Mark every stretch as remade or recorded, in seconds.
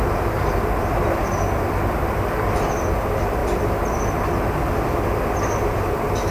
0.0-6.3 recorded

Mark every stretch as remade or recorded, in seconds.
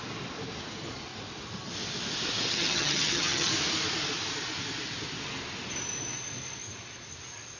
0.0-2.5 recorded; 2.5-3.5 remade; 3.5-7.6 recorded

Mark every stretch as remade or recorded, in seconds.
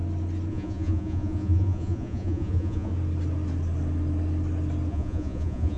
0.0-0.5 recorded; 0.5-2.9 remade; 2.9-4.9 recorded; 4.9-5.8 remade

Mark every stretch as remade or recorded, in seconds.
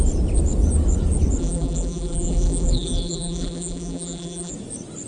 0.0-1.4 recorded; 1.4-4.5 remade; 4.5-5.1 recorded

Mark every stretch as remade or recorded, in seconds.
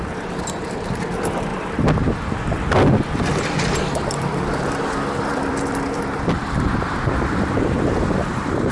0.0-1.5 remade; 1.5-4.1 recorded; 4.1-8.7 remade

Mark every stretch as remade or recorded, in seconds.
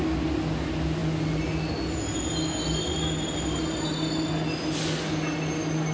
0.0-5.9 recorded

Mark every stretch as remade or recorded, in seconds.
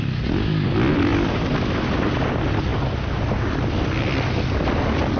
0.0-5.2 recorded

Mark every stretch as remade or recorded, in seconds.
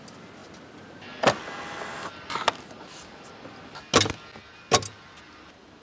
0.0-5.8 recorded